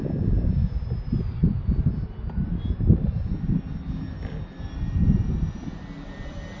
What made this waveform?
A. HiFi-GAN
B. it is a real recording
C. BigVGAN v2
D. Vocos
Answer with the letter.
B